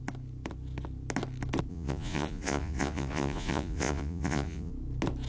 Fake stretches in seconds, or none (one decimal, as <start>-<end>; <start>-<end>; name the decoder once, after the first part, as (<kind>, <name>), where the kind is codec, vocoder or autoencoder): 1.7-4.7 (vocoder, Vocos)